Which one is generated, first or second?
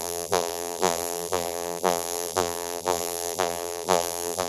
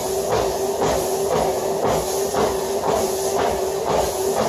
first